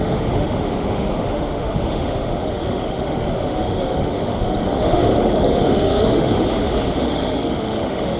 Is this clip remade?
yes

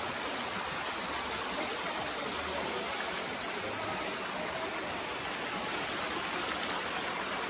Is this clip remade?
no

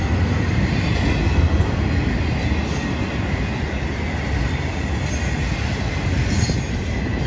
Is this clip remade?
no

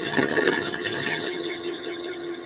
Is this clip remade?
yes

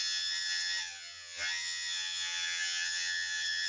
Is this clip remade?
yes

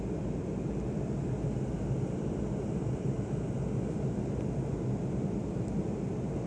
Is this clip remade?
no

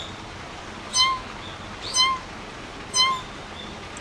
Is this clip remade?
no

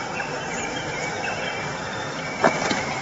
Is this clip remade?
no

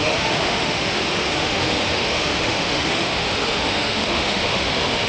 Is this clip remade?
yes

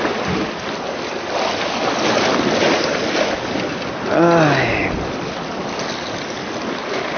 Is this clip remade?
no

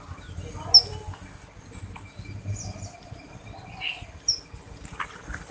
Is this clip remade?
no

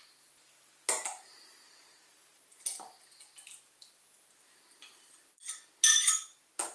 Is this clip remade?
no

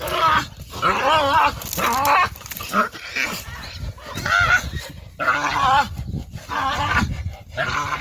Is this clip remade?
no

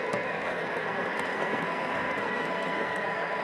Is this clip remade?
yes